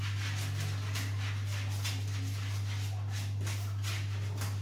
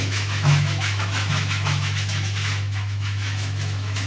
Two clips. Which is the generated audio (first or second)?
second